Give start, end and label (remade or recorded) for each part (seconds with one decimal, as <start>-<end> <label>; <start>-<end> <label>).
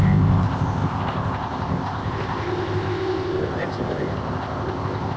0.0-5.2 remade